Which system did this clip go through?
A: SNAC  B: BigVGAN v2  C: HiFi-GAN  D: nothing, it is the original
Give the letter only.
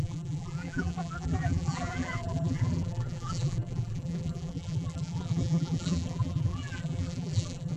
B